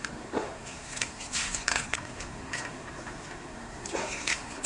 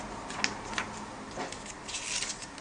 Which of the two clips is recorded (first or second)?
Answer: second